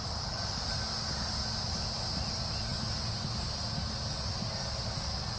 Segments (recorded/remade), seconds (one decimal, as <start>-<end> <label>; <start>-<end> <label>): 0.0-5.4 recorded